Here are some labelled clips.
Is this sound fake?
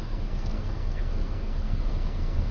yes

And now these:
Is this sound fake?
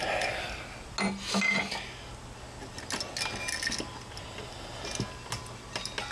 no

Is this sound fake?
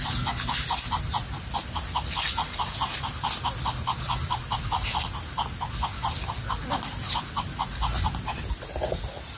no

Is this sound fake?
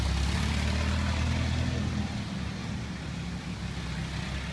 no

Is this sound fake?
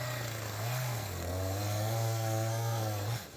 yes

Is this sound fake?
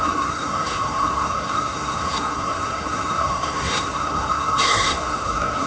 yes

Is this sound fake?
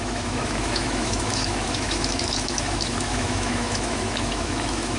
yes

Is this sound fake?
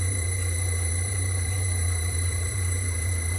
yes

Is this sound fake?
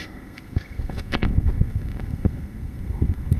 yes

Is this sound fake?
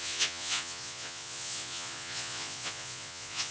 yes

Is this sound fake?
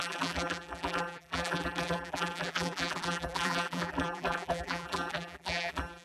yes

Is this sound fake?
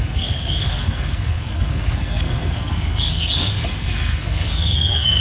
yes